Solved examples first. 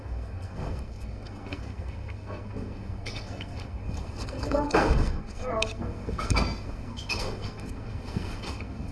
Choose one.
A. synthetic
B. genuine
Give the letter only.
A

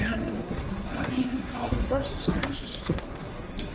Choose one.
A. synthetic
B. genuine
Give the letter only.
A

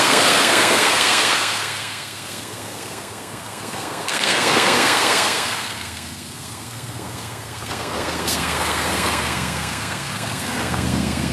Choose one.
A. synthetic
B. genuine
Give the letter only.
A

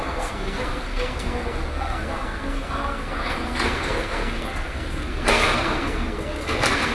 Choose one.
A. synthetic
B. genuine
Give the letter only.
A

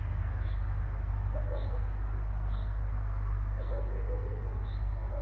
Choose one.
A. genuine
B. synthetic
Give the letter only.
B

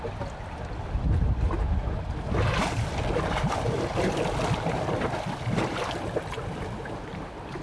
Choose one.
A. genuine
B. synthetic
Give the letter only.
A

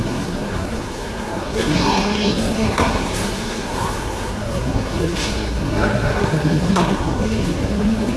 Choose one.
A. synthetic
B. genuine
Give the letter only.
A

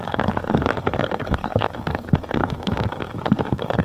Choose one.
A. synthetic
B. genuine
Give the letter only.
A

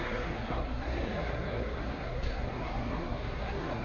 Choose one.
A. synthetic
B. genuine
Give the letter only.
A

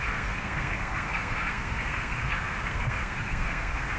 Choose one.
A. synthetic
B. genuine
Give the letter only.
A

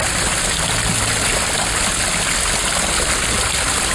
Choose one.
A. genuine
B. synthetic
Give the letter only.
A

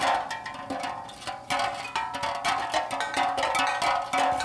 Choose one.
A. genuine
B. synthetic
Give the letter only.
A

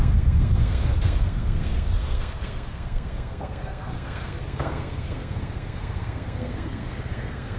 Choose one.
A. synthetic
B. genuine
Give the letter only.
A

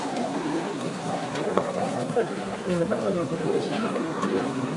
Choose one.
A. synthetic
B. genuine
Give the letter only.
A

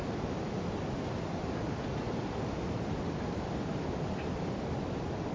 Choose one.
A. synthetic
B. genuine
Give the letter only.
B